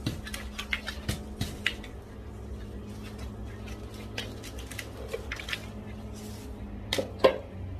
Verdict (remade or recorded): recorded